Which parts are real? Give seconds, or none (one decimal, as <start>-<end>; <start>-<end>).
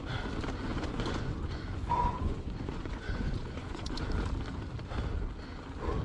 0.0-0.7; 4.0-6.0